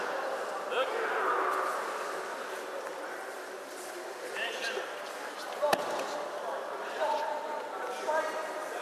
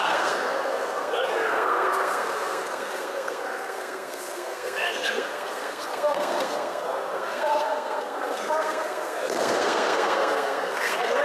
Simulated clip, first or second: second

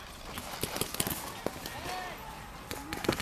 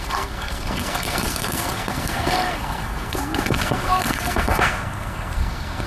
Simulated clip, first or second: second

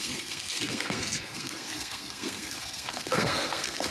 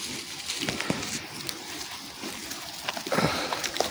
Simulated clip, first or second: first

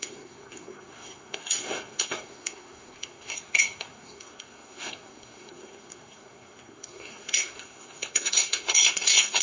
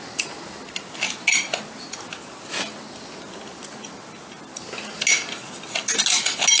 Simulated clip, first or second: first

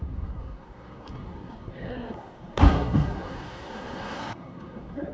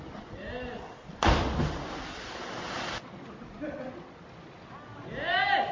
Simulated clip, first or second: first